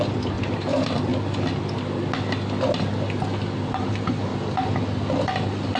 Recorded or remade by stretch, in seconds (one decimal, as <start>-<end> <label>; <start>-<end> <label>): 0.0-1.1 remade; 1.1-3.8 recorded; 3.8-4.3 remade; 4.3-5.8 recorded